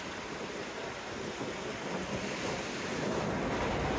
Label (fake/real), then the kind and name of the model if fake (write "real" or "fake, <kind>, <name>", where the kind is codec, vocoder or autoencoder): real